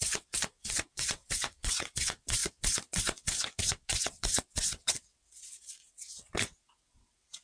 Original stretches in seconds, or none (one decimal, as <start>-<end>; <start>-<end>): none